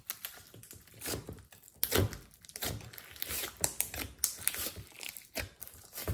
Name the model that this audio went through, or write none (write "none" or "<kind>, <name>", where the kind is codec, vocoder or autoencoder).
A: none